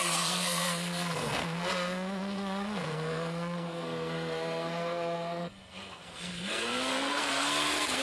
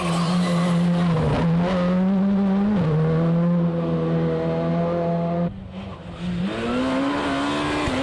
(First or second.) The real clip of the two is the second